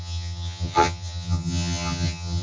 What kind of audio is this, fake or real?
fake